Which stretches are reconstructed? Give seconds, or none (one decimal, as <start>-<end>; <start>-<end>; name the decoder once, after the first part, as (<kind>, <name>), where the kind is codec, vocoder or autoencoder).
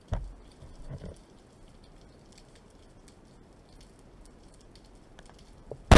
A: 0.5-1.4 (vocoder, BigVGAN v2)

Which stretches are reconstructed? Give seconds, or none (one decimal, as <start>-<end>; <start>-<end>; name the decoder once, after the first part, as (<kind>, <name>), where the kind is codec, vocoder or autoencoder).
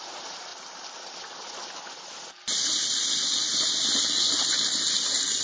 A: none